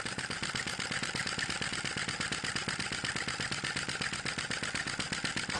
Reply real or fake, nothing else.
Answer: real